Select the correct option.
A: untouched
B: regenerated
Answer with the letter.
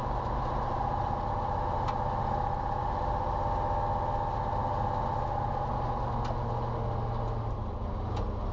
A